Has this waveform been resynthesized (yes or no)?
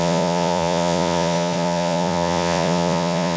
yes